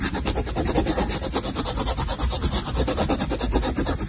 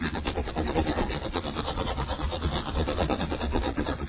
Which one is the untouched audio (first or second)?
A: first